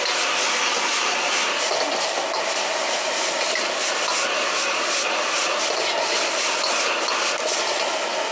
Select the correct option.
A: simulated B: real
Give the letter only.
B